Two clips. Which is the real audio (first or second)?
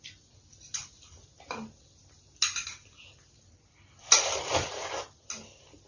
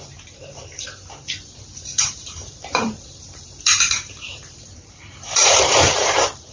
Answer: first